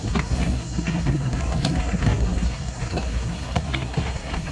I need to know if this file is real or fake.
fake